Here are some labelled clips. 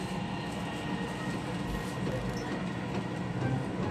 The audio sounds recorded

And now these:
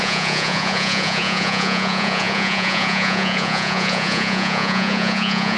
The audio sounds remade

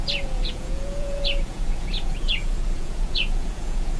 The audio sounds remade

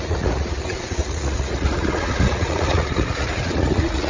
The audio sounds remade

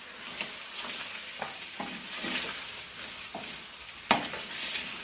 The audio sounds recorded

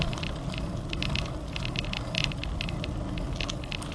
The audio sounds recorded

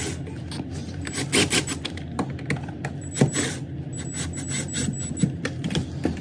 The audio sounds recorded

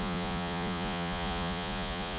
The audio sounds remade